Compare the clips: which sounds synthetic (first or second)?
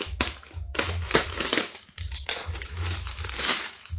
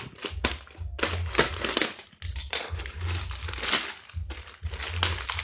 first